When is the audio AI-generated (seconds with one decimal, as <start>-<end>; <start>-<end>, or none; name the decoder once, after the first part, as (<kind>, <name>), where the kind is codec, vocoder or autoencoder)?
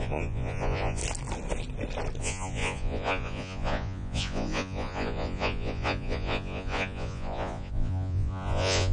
0.0-1.0 (vocoder, Vocos); 2.2-8.9